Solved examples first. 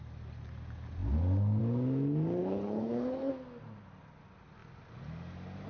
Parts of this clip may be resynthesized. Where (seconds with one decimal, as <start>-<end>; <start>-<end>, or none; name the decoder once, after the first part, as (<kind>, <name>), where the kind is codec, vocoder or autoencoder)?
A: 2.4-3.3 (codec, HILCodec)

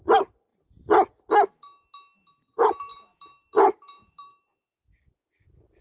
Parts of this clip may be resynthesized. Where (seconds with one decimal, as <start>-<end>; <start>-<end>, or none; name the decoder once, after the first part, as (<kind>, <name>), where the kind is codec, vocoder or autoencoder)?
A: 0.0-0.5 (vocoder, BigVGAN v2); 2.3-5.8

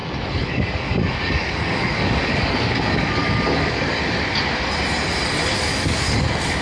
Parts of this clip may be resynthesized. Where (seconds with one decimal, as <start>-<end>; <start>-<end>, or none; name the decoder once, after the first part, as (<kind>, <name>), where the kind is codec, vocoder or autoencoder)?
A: 0.0-4.0 (codec, DAC); 5.7-6.6